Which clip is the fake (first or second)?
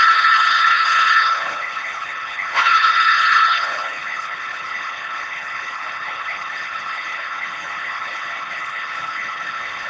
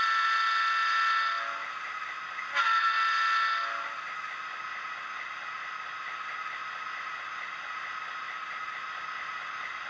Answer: first